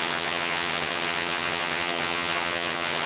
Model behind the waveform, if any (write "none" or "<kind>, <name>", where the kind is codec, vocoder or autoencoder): vocoder, HiFi-GAN